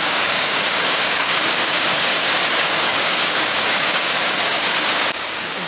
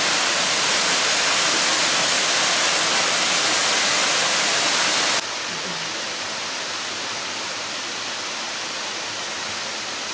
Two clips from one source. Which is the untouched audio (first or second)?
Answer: second